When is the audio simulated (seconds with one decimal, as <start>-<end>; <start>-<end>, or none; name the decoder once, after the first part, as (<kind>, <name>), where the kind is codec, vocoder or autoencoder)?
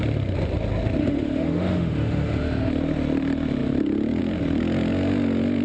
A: 1.0-2.7 (autoencoder, DAC-VAE)